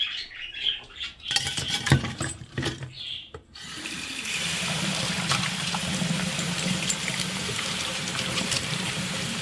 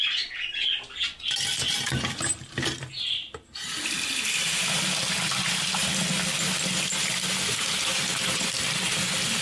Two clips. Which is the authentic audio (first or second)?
second